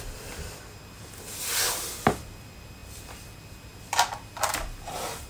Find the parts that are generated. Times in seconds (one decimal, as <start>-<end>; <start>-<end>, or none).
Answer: 0.0-5.3